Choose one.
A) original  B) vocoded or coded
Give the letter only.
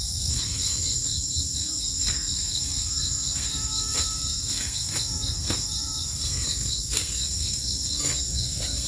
B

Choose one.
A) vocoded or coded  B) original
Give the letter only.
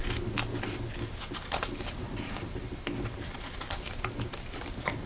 B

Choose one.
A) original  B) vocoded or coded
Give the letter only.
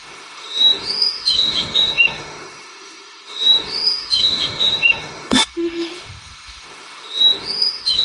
B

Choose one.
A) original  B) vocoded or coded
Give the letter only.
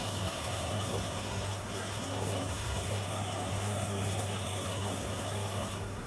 B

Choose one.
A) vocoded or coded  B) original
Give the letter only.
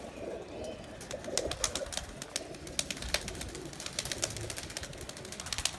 B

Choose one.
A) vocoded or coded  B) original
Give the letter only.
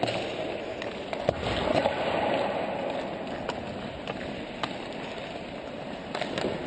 B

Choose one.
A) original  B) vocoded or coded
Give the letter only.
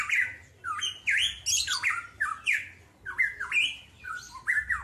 A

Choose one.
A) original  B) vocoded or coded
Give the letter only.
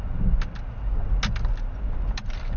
A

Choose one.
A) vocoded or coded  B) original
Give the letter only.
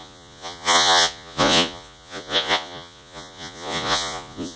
A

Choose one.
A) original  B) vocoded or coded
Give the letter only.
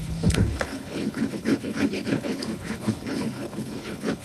B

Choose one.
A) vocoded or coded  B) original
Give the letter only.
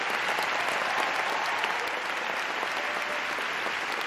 B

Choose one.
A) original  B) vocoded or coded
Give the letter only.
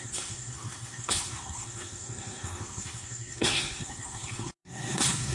B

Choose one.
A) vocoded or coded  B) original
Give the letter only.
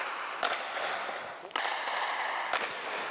B